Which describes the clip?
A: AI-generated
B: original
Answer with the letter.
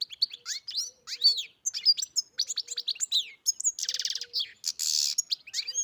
B